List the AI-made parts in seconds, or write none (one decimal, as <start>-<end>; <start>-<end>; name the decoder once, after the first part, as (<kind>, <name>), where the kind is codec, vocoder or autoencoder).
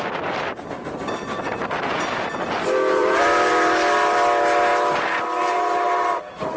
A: 3.0-3.5 (vocoder, BigVGAN v2)